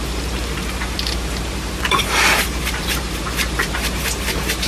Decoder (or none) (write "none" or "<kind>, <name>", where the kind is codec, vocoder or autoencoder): vocoder, BigVGAN v2